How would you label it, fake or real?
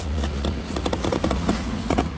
fake